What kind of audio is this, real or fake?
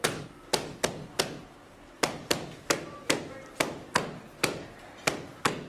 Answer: real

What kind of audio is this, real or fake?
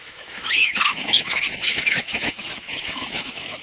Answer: fake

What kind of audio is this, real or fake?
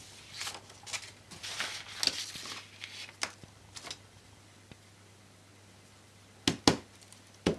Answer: real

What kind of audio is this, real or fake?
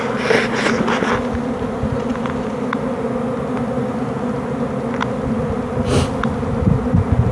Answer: real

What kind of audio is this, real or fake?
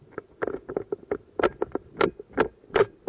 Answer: real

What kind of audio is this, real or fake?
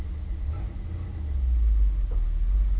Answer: real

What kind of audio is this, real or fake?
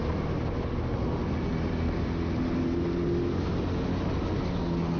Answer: real